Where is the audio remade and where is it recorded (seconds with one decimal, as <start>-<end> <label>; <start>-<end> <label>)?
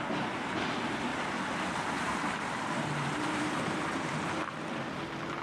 0.0-1.1 recorded; 1.1-4.3 remade; 4.3-5.4 recorded